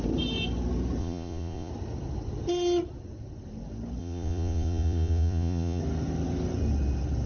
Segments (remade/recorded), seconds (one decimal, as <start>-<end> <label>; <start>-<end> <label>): 0.0-1.0 recorded; 1.0-1.7 remade; 1.7-4.0 recorded; 4.0-5.8 remade; 5.8-7.3 recorded